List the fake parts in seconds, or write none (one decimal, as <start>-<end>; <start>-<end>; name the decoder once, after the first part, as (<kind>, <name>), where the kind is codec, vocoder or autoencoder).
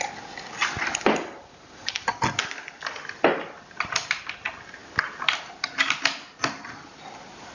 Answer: none